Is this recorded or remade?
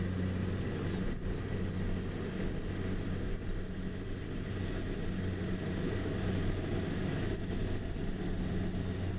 recorded